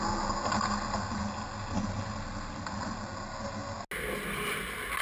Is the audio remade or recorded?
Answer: recorded